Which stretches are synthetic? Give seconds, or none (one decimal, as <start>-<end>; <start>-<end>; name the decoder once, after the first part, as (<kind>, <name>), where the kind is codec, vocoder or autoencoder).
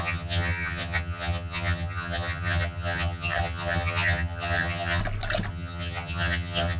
0.0-5.0 (vocoder, HiFi-GAN); 5.5-6.8